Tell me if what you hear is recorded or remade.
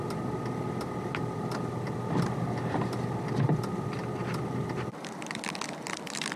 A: remade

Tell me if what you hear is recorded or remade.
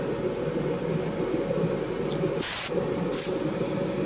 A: recorded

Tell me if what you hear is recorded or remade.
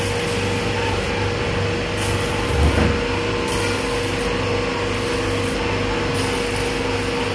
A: recorded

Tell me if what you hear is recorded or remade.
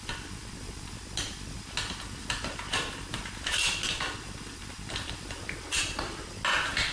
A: recorded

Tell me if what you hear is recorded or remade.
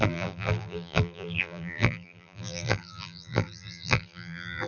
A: remade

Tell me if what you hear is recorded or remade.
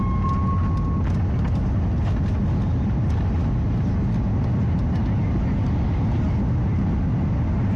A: recorded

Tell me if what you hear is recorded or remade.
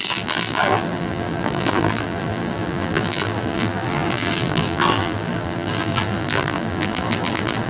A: remade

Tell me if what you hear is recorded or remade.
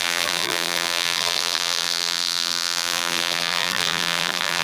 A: remade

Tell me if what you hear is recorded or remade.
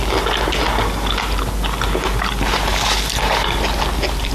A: remade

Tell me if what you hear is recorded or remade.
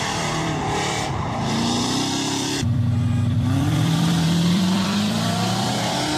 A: remade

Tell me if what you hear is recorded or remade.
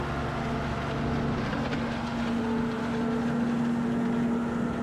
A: recorded